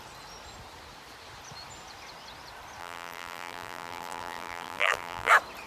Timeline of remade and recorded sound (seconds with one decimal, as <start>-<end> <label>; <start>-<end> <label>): 0.0-2.8 recorded; 2.8-5.3 remade; 5.3-5.7 recorded